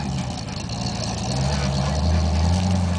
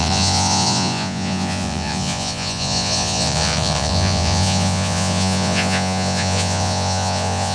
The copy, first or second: second